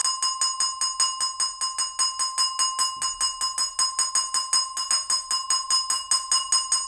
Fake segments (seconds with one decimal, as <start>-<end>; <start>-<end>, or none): none